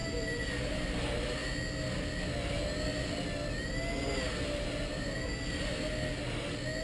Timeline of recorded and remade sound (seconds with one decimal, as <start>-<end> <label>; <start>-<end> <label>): 0.0-6.8 recorded